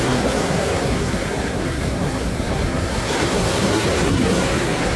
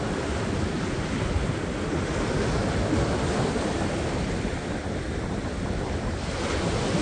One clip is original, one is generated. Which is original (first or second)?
second